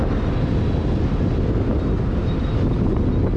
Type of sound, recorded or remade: recorded